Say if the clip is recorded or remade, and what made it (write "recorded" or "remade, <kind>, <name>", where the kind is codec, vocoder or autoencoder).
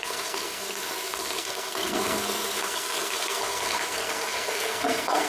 remade, codec, SNAC